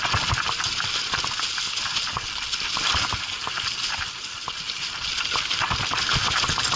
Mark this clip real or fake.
real